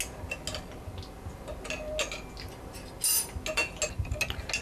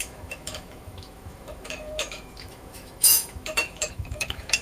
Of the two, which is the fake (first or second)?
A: second